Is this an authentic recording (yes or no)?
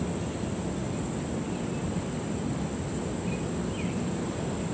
yes